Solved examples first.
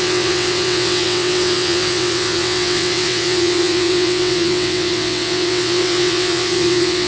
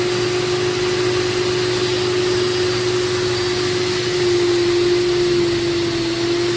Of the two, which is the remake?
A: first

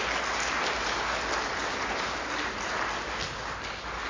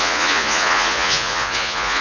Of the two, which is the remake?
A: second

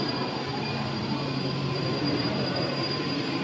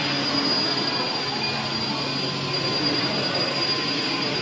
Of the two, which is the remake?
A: first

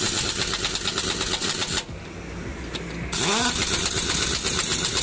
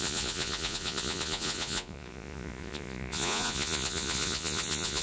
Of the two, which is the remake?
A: second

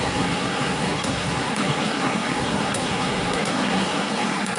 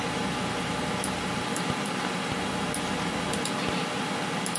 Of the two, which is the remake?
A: first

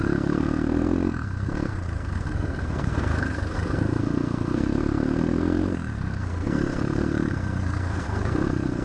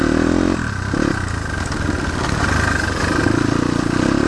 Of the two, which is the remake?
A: first